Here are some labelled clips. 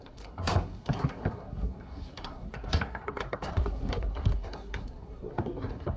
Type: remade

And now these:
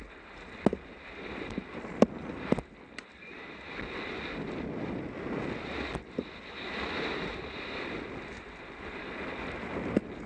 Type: recorded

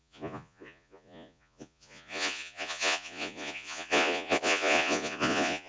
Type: remade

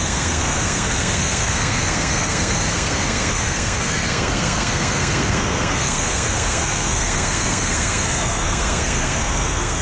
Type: remade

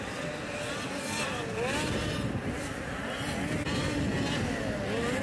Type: recorded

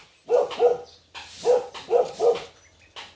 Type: recorded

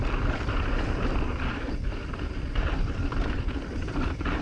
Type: remade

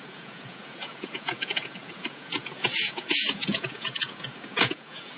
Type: remade